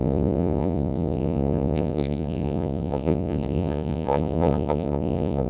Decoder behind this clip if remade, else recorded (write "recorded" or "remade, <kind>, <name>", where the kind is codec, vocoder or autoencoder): remade, vocoder, Vocos